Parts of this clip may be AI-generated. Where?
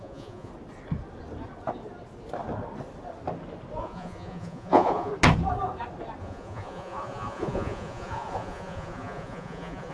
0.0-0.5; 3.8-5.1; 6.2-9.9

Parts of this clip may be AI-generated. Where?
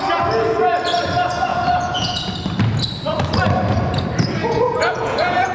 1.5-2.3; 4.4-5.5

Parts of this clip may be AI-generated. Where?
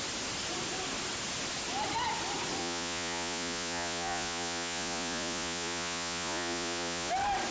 2.6-7.1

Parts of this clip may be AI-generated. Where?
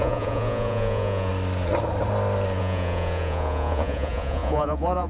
0.0-1.3; 2.6-5.1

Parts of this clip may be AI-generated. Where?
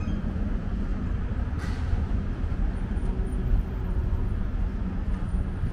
0.0-0.9; 1.5-3.0; 3.8-5.7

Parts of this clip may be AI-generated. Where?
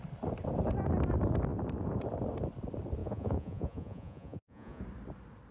3.0-4.8